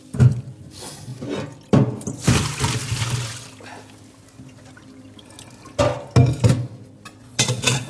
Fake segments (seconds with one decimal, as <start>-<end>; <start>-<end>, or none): 7.2-7.9